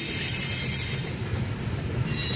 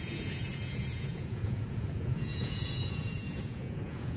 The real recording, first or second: first